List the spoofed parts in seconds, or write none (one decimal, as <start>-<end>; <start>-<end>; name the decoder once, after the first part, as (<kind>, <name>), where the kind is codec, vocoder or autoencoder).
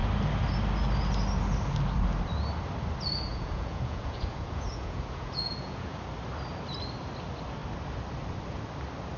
3.3-6.0 (vocoder, Vocos)